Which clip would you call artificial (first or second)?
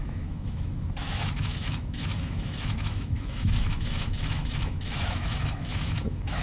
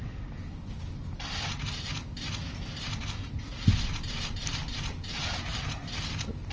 first